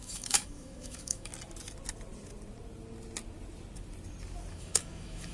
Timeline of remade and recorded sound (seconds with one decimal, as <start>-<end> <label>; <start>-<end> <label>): 0.0-1.3 remade; 1.3-4.5 recorded; 4.5-5.3 remade